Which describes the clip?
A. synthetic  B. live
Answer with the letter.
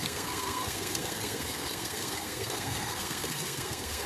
A